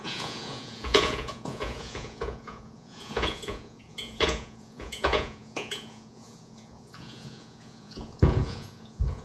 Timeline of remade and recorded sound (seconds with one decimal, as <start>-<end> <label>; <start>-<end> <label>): 0.0-9.2 remade